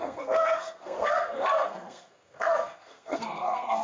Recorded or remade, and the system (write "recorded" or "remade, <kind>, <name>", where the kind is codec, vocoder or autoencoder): remade, codec, SNAC